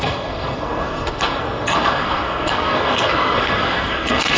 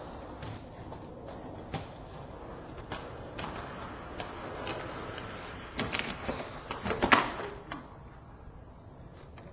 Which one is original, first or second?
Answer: second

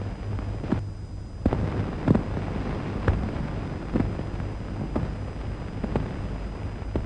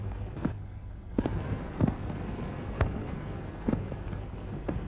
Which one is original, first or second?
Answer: first